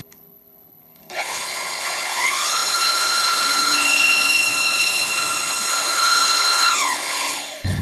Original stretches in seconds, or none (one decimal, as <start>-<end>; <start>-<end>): none